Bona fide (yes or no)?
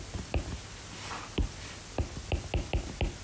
yes